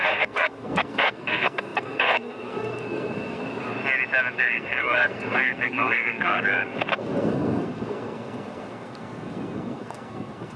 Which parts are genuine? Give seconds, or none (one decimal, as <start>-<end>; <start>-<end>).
3.4-4.3